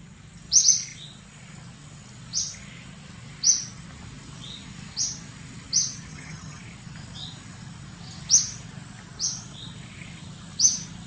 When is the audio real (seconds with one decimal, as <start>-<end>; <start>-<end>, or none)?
0.0-6.1; 6.6-11.1